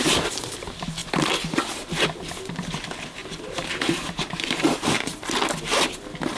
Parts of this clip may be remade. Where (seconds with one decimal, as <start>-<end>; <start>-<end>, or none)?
3.2-5.1